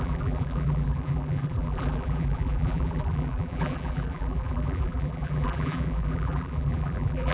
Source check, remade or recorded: remade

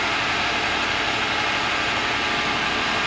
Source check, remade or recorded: recorded